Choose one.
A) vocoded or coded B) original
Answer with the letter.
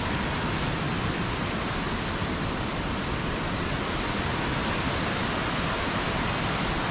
B